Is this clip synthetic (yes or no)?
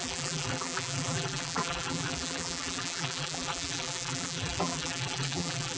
yes